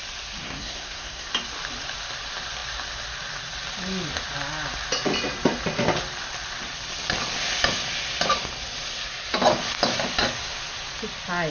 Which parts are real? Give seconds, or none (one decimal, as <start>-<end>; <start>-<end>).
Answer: 0.0-0.4; 1.3-11.5